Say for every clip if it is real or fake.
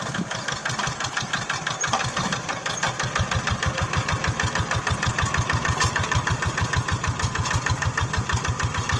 real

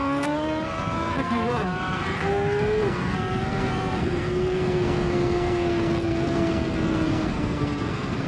fake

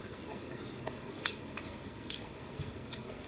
fake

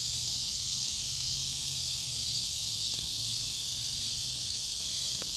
fake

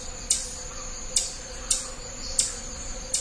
real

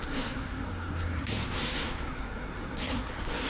fake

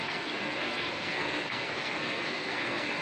fake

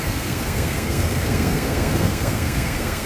fake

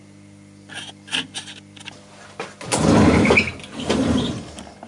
real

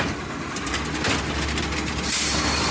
real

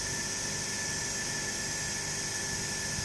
real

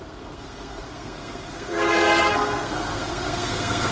fake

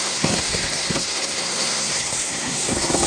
fake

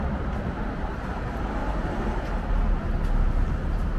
real